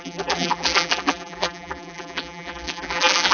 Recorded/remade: remade